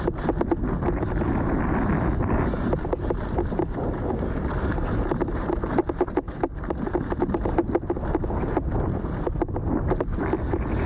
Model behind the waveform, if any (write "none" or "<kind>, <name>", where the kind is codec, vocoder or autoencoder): none